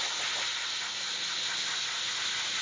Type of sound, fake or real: real